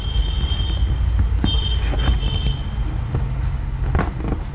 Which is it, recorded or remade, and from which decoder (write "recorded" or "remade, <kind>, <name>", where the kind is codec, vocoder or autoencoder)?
recorded